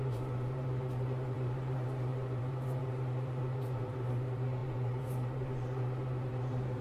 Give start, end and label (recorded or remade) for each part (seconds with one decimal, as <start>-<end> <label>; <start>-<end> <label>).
0.0-6.8 remade